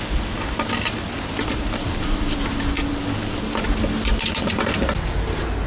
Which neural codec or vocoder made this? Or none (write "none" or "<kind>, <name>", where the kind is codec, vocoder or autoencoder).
none